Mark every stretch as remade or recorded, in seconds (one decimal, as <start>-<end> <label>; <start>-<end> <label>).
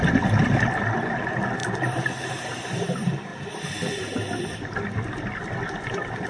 0.0-6.3 recorded